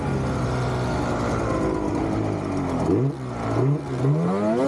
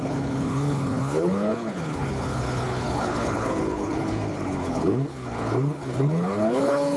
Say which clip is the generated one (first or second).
second